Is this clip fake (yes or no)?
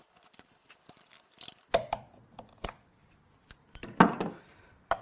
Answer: no